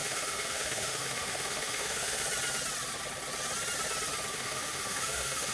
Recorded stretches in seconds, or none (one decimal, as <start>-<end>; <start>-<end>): 2.2-4.3